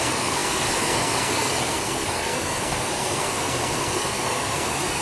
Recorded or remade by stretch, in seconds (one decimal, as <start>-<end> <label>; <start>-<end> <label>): 0.0-5.0 remade